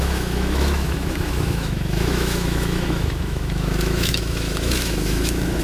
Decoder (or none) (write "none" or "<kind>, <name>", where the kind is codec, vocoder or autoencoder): autoencoder, DAC-VAE